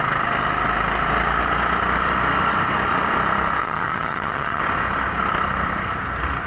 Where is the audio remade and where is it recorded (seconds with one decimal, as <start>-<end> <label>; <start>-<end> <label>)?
0.0-3.6 recorded; 3.6-4.6 remade; 4.6-6.5 recorded